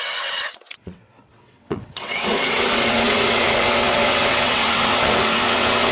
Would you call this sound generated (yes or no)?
yes